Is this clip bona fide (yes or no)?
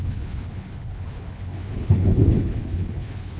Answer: no